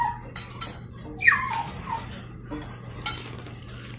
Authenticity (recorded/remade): recorded